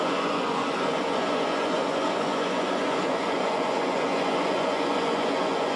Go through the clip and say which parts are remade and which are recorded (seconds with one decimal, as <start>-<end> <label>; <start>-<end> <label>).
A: 0.0-5.8 remade

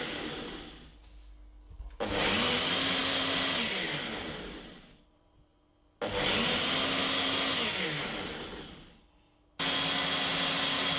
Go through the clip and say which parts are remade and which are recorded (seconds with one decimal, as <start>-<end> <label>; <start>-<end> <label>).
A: 0.0-11.0 recorded

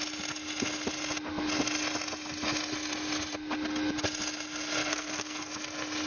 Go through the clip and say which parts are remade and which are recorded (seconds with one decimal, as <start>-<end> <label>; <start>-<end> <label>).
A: 0.0-4.8 recorded; 4.8-5.5 remade; 5.5-6.1 recorded

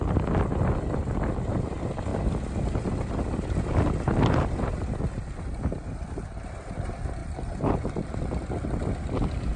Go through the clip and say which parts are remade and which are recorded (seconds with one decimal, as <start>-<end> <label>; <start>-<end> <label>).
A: 0.0-9.6 recorded